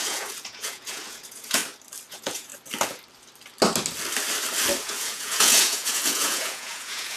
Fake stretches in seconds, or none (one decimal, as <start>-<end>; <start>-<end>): 0.0-1.6; 2.1-2.5; 4.8-7.2